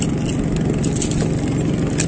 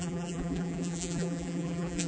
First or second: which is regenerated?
second